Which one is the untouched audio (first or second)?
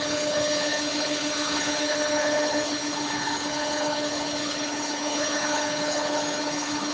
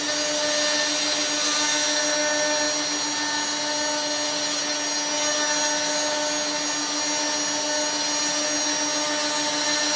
second